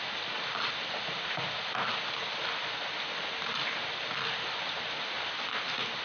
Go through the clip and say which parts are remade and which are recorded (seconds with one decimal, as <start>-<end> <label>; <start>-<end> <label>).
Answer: 0.0-6.0 recorded